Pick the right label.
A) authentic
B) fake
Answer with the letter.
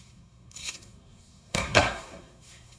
B